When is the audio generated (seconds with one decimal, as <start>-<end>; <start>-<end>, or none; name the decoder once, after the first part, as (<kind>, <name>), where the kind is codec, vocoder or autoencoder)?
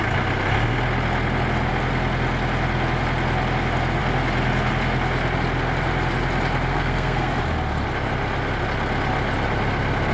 6.7-7.4 (codec, SNAC)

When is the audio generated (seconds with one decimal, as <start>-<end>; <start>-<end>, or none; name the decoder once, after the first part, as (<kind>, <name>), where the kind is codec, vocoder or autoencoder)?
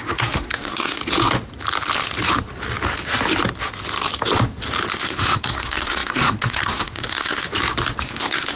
0.0-1.0 (codec, SNAC); 5.0-7.4; 8.0-8.6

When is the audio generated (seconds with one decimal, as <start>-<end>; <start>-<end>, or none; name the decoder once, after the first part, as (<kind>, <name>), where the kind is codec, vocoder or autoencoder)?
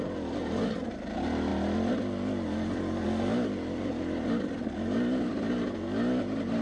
none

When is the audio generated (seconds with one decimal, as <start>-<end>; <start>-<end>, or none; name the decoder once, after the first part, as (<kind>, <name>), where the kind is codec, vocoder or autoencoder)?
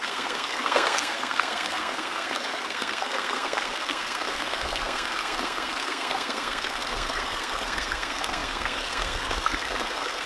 0.0-10.3 (codec, SNAC)